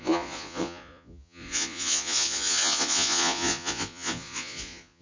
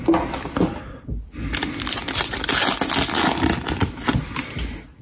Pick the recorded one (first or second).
second